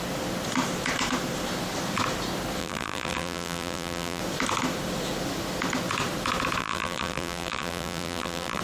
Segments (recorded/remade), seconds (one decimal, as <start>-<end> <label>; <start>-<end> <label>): 0.0-2.6 recorded; 2.6-4.2 remade; 4.2-6.6 recorded; 6.6-8.6 remade